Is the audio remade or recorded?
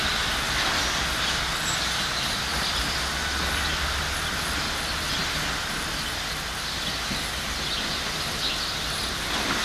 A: recorded